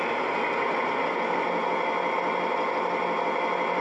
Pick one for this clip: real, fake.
real